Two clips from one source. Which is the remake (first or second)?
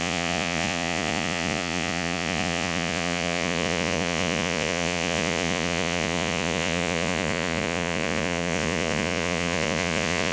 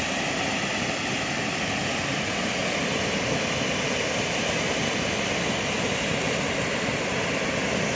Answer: first